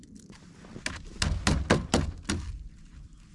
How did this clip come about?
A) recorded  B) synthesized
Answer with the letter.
A